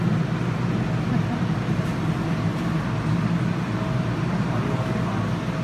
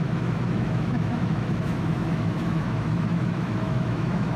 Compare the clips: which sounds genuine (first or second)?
first